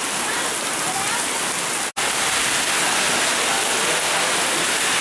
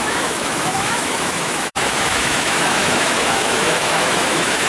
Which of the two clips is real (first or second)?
first